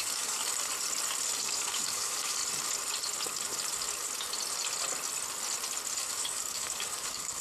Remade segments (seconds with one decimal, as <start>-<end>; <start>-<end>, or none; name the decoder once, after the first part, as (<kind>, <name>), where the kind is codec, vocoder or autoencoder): 0.0-0.4 (codec, DAC); 1.4-2.4; 6.0-7.4